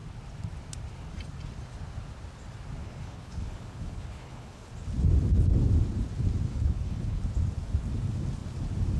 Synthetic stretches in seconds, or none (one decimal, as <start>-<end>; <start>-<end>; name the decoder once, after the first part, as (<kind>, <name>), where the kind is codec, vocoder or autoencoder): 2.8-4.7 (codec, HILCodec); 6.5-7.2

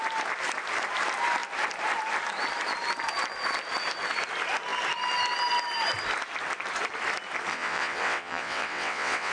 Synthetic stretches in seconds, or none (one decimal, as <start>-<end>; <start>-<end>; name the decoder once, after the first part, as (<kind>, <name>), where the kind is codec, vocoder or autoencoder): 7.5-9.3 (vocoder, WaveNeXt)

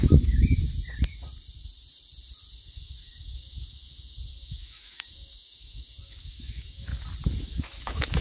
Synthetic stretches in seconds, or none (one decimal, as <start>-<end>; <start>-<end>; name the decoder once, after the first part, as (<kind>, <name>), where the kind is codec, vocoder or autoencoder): 0.0-0.6 (autoencoder, DAC-VAE); 2.6-6.9; 7.4-8.2

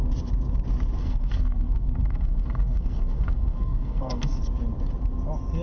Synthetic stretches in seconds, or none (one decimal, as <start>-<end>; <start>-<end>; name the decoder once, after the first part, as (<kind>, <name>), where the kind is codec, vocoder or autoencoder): 1.0-4.4 (codec, SNAC)

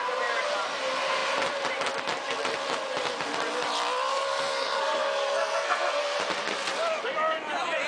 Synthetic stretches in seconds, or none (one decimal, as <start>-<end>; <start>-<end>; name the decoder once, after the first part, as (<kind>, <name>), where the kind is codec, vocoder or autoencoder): 4.1-6.0 (codec, SNAC)

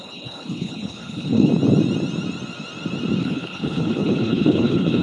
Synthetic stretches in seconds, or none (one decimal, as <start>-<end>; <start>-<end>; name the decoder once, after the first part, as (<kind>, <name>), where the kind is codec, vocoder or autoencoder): 0.0-1.5 (codec, HILCodec); 3.2-5.0

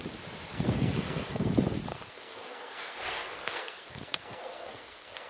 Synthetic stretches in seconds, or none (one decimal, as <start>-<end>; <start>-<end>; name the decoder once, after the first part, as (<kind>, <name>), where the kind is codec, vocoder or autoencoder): 0.5-1.5 (codec, SNAC); 1.9-5.3

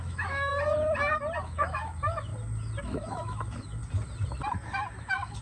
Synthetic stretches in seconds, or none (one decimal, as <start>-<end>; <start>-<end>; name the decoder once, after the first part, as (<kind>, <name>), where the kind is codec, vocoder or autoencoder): 0.0-0.5 (autoencoder, DAC-VAE); 1.4-2.3; 2.8-3.8; 5.0-5.4